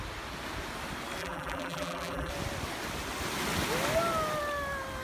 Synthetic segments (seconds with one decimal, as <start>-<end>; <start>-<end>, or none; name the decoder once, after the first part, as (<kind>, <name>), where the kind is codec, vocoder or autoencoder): 1.2-2.3 (vocoder, BigVGAN v2)